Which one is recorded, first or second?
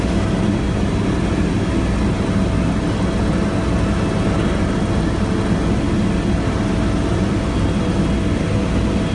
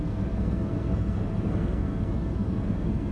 first